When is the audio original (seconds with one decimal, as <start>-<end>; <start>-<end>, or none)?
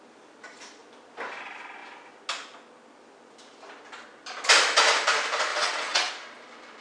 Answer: 0.0-5.5; 6.1-6.8